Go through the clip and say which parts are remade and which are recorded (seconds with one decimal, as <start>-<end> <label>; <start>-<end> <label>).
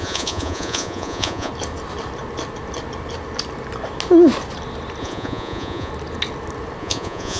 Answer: 0.0-1.5 remade; 1.5-5.0 recorded; 5.0-5.9 remade; 5.9-6.8 recorded; 6.8-7.4 remade